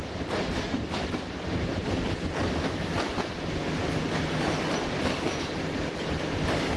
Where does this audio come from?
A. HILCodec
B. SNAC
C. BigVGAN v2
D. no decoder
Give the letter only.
D